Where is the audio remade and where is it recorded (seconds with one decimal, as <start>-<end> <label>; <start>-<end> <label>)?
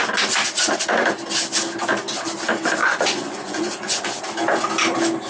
0.0-2.8 recorded; 2.8-4.2 remade; 4.2-5.3 recorded